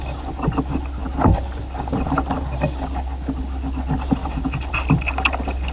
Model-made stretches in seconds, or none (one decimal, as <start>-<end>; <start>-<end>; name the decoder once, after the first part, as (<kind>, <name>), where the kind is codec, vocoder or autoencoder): none